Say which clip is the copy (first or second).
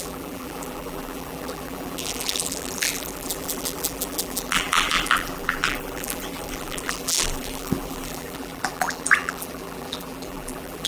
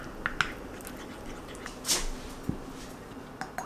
first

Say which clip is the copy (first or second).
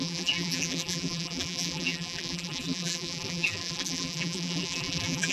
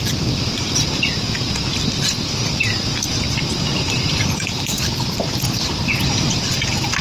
first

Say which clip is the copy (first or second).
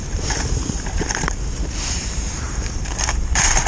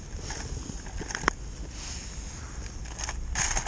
first